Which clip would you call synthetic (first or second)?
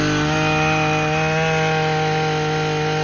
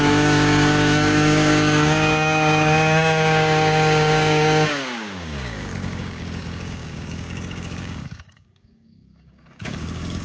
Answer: second